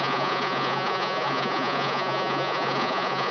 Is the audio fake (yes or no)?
yes